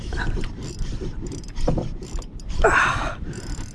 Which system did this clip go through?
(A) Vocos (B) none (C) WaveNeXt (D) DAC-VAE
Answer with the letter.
B